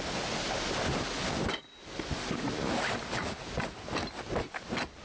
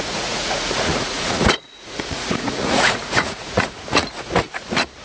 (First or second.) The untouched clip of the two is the first